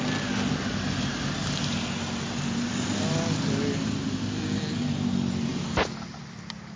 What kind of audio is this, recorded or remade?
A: recorded